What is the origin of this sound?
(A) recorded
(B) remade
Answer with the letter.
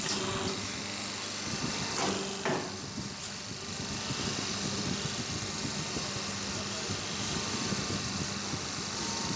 A